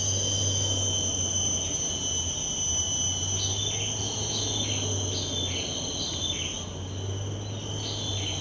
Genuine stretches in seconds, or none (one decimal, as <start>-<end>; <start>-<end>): 0.0-4.0; 4.7-8.4